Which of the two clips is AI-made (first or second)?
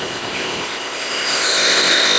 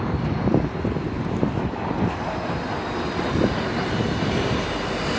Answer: first